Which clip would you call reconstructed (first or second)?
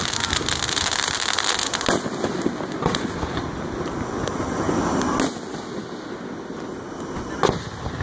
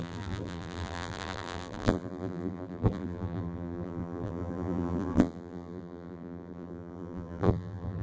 second